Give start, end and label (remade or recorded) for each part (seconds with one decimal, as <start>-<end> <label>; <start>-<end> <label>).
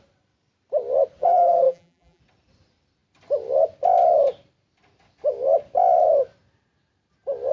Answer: 0.0-1.2 recorded; 1.2-2.2 remade; 2.2-7.5 recorded